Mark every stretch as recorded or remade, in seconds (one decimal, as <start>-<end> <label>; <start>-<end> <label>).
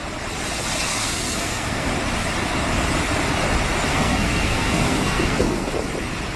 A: 0.0-0.9 recorded; 0.9-1.9 remade; 1.9-3.9 recorded; 3.9-5.7 remade; 5.7-6.4 recorded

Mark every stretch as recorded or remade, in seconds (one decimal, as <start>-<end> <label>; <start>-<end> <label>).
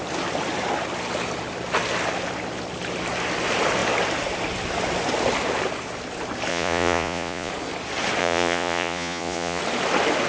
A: 0.0-6.5 recorded; 6.5-7.5 remade; 7.5-8.2 recorded; 8.2-9.6 remade; 9.6-10.3 recorded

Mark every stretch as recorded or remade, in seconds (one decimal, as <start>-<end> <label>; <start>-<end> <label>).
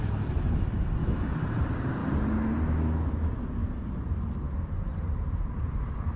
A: 0.0-1.0 recorded; 1.0-1.6 remade; 1.6-6.2 recorded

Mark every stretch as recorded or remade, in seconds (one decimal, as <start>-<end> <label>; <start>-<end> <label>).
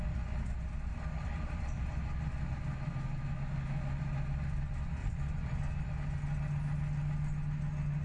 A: 0.0-0.9 recorded; 0.9-1.9 remade; 1.9-5.0 recorded; 5.0-5.9 remade; 5.9-8.0 recorded